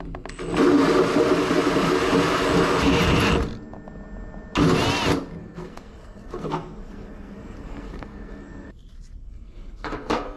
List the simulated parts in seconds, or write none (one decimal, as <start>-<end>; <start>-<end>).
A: 5.4-8.7; 9.2-10.4